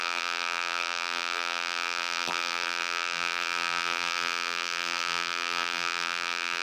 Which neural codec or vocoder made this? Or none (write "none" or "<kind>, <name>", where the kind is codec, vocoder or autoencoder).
vocoder, BigVGAN v2